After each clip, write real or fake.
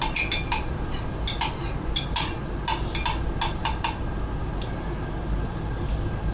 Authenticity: real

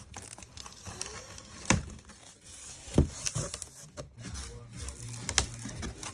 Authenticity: real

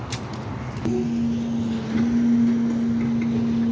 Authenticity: real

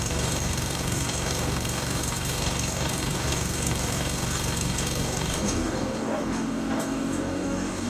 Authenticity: fake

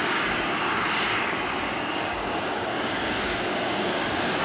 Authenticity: fake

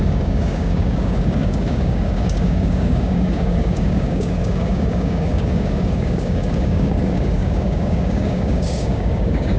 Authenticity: fake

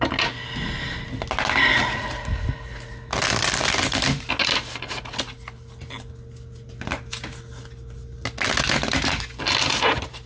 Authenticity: real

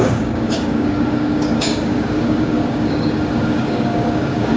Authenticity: fake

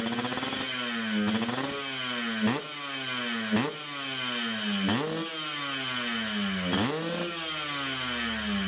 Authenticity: real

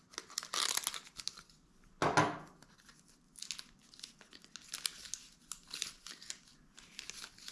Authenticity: real